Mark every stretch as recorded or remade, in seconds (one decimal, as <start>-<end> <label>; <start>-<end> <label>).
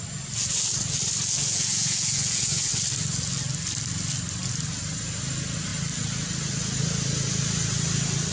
0.0-1.3 recorded; 1.3-2.7 remade; 2.7-8.3 recorded